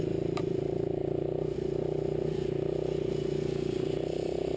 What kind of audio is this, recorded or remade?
recorded